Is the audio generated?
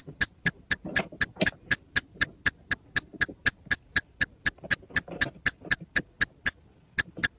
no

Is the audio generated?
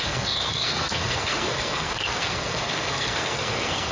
yes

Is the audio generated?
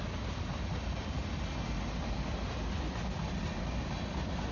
no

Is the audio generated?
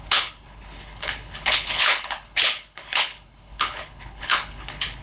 yes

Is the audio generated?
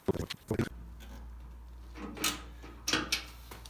no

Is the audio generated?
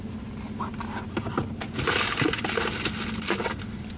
no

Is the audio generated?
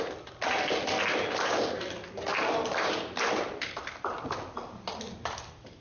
no